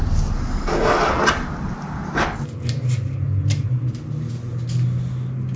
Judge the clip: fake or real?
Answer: real